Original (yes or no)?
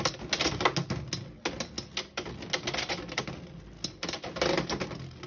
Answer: yes